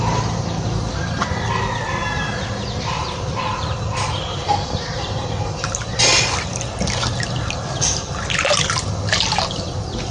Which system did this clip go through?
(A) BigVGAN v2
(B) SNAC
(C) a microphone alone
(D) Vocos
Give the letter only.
C